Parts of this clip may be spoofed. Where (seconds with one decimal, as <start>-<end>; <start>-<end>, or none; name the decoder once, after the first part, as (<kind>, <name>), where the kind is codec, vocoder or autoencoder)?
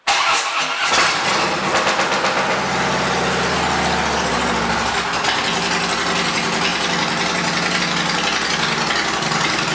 none